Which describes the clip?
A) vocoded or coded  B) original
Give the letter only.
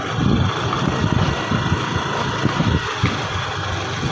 B